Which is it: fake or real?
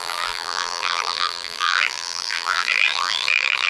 fake